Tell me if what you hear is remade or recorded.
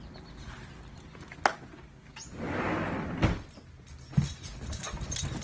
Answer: recorded